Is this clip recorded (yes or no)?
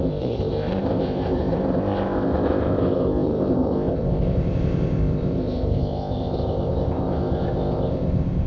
no